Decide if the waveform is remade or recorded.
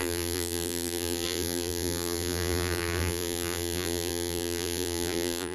remade